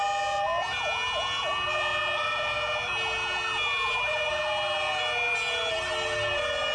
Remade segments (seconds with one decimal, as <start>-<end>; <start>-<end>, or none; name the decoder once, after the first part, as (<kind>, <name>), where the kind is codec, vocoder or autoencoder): none